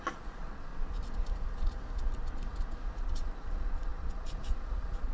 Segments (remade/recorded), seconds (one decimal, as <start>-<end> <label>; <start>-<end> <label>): 0.0-0.7 remade; 0.7-3.0 recorded; 3.0-5.1 remade